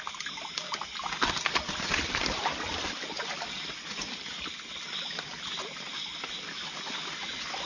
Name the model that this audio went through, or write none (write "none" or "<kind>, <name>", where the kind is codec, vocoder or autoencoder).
none